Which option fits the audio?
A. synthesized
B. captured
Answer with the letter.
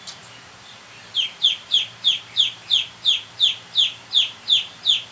A